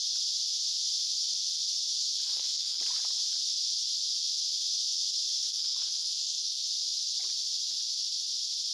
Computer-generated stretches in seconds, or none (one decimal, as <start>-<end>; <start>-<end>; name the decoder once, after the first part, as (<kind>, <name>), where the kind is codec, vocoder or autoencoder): 2.0-2.8 (codec, SNAC); 5.5-6.6